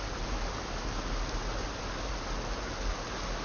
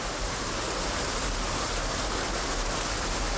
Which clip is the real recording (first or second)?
first